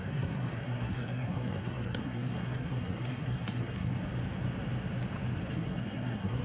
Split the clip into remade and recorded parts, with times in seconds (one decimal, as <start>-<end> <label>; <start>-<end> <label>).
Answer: 0.0-3.9 remade; 3.9-5.5 recorded; 5.5-6.4 remade